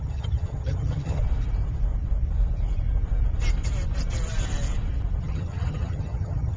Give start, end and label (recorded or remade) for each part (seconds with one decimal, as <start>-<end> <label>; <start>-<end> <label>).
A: 0.0-1.2 remade; 1.2-5.2 recorded; 5.2-6.6 remade